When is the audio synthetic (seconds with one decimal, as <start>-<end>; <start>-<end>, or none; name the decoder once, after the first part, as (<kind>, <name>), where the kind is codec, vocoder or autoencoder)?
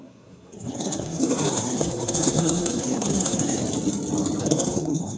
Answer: 0.0-3.6 (codec, SNAC); 4.4-5.2